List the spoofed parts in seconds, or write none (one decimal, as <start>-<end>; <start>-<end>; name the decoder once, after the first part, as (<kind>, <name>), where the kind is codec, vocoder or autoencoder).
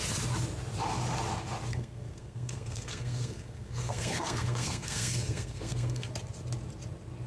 1.7-6.1 (codec, SNAC)